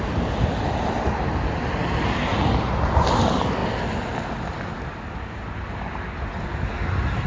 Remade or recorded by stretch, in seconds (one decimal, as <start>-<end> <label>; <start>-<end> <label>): 0.0-2.3 remade; 2.3-3.0 recorded; 3.0-3.6 remade; 3.6-5.2 recorded; 5.2-6.5 remade; 6.5-7.3 recorded